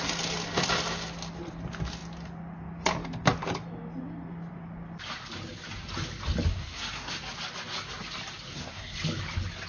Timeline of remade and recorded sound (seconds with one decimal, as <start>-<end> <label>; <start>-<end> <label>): 0.0-6.5 recorded; 6.5-7.1 remade; 7.1-8.5 recorded; 8.5-9.0 remade; 9.0-9.7 recorded